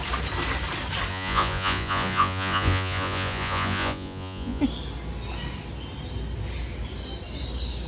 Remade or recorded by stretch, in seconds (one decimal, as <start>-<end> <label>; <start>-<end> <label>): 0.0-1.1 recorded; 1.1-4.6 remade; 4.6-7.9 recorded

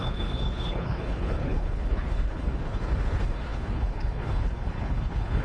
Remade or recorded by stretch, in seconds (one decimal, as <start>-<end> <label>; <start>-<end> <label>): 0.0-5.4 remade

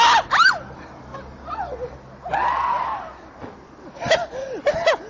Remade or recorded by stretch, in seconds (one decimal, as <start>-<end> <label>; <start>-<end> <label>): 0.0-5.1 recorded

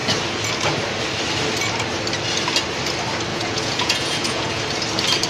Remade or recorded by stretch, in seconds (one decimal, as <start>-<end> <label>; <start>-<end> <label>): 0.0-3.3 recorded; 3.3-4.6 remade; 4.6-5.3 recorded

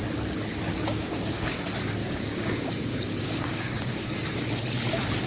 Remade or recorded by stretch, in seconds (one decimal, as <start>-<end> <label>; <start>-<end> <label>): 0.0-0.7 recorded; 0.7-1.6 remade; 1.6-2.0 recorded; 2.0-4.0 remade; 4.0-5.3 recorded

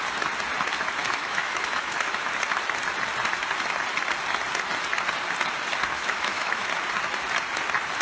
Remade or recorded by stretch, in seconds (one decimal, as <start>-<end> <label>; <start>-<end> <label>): 0.0-1.0 recorded; 1.0-2.3 remade; 2.3-5.9 recorded; 5.9-6.7 remade; 6.7-8.0 recorded